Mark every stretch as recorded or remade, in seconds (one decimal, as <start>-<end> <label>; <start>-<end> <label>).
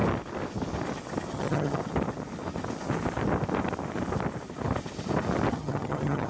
0.0-1.3 recorded; 1.3-1.8 remade; 1.8-5.5 recorded; 5.5-6.3 remade